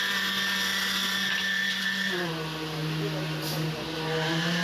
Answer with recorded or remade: recorded